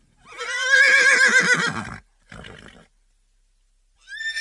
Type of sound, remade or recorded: recorded